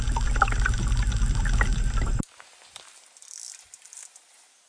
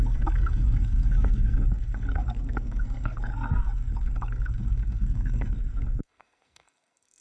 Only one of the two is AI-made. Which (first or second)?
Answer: second